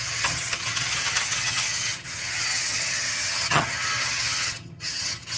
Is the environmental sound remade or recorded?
remade